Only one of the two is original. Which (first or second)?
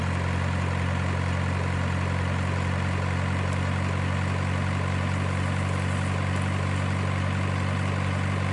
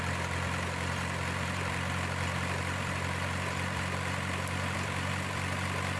first